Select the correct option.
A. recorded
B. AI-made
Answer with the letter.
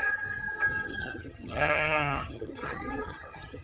B